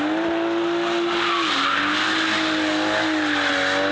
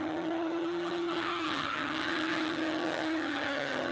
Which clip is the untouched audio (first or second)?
first